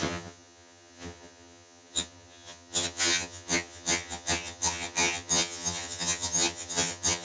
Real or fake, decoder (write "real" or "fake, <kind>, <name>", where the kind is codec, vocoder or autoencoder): fake, vocoder, HiFi-GAN